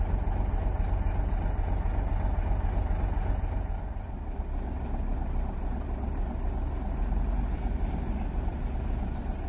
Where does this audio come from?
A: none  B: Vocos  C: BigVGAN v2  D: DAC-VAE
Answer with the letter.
A